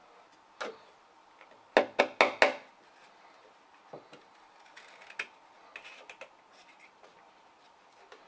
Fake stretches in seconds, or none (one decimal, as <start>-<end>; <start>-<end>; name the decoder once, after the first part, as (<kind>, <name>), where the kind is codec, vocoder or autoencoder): none